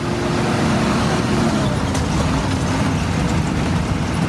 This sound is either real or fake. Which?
real